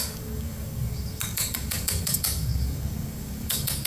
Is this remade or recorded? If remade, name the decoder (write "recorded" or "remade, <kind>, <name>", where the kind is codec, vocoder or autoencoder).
remade, codec, DAC